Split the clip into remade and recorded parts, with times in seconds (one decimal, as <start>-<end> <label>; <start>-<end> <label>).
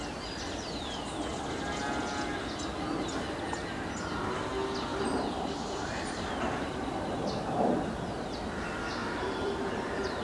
0.0-4.9 recorded; 4.9-7.8 remade; 7.8-9.0 recorded; 9.0-10.2 remade